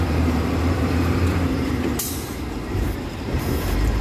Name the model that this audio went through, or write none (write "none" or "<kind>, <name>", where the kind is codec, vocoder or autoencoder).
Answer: vocoder, BigVGAN v2